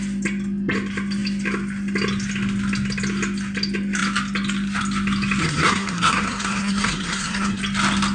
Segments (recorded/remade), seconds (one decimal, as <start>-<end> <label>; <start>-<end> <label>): 0.0-5.4 recorded; 5.4-7.6 remade; 7.6-8.1 recorded